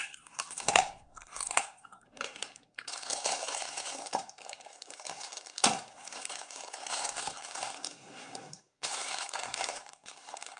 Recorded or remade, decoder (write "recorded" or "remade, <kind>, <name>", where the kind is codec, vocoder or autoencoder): remade, codec, SNAC